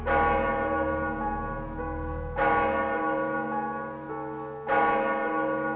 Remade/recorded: recorded